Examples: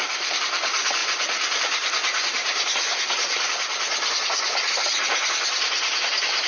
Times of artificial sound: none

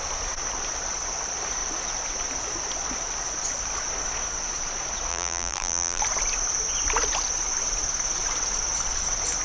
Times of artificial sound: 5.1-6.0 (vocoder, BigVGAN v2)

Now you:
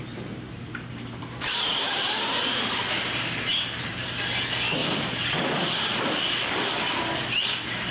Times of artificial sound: 0.0-3.9 (vocoder, BigVGAN v2); 4.8-5.7

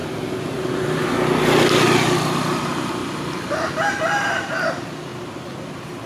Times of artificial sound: 0.0-1.1 (vocoder, BigVGAN v2)

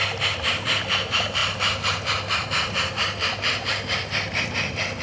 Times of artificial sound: 0.0-5.0 (vocoder, BigVGAN v2)

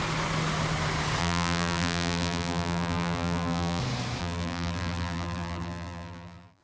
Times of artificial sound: 1.2-3.8 (vocoder, BigVGAN v2); 4.2-6.6

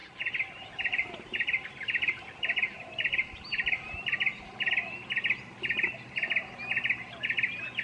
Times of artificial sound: 0.0-4.7 (vocoder, BigVGAN v2)

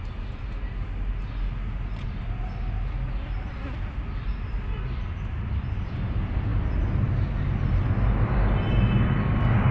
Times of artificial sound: none